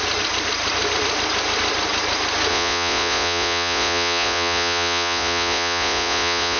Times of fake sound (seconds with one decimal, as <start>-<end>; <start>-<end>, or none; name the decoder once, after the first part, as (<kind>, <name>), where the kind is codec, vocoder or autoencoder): 2.5-6.6 (vocoder, Vocos)